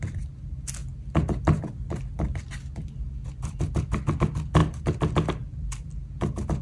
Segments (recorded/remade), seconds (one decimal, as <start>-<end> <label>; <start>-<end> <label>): 0.0-6.6 recorded